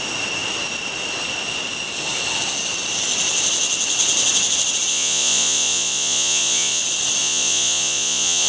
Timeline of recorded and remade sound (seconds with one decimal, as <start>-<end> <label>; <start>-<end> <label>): 0.0-4.9 recorded; 4.9-6.8 remade; 6.8-7.2 recorded; 7.2-8.5 remade

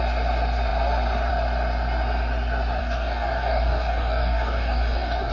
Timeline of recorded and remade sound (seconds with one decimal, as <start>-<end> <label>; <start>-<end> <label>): 0.0-2.8 recorded; 2.8-5.3 remade

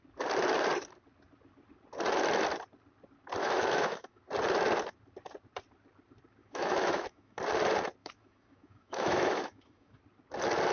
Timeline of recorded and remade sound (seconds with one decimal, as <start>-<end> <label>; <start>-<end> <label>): 0.0-3.4 recorded; 3.4-4.2 remade; 4.2-6.4 recorded; 6.4-7.4 remade; 7.4-8.0 recorded; 8.0-10.0 remade; 10.0-10.7 recorded

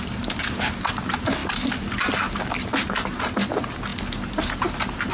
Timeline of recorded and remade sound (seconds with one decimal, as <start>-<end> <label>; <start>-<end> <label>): 0.0-5.1 recorded